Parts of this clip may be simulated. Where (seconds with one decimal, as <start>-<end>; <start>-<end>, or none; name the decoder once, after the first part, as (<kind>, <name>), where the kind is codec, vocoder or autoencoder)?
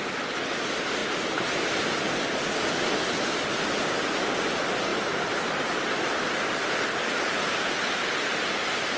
4.9-5.5 (vocoder, BigVGAN v2)